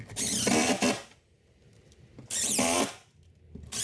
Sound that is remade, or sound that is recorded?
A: recorded